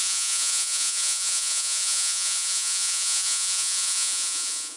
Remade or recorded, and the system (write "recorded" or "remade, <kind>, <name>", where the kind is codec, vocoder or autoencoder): remade, vocoder, Vocos